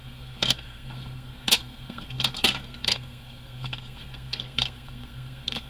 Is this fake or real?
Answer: fake